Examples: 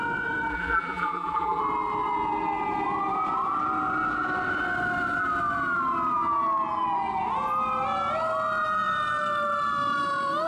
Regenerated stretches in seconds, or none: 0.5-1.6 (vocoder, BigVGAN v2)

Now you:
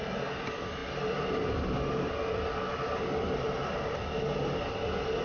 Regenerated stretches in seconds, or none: none